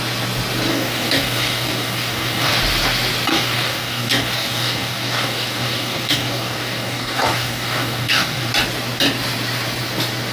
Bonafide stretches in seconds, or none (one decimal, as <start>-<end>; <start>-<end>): 0.0-0.7; 2.5-3.3; 8.5-10.3